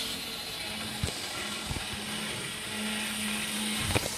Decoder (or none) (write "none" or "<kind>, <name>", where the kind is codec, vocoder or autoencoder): none